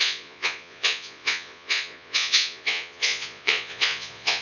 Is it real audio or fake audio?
fake